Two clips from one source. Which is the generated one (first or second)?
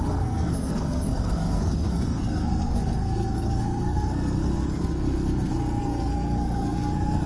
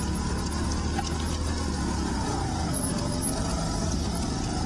first